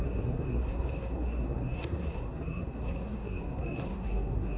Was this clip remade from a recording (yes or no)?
yes